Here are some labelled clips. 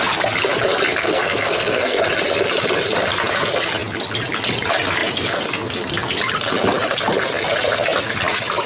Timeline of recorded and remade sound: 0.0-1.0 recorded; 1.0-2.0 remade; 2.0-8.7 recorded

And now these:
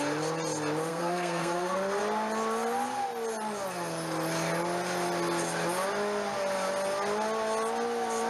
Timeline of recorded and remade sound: 0.0-0.9 recorded; 0.9-2.0 remade; 2.0-8.3 recorded

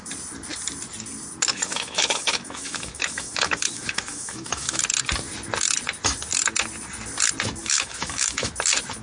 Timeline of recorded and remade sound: 0.0-1.5 recorded; 1.5-4.8 remade; 4.8-7.6 recorded; 7.6-8.5 remade; 8.5-9.0 recorded

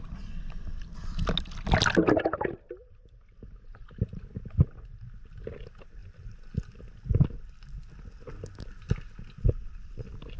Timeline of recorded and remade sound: 0.0-10.4 recorded

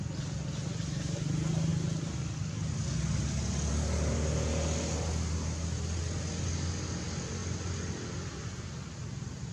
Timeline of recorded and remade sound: 0.0-9.5 recorded

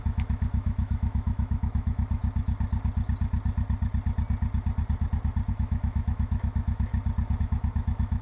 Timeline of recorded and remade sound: 0.0-2.2 remade; 2.2-5.5 recorded; 5.5-6.9 remade; 6.9-7.4 recorded; 7.4-8.2 remade

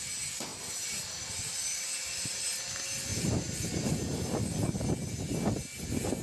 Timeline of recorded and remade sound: 0.0-6.2 recorded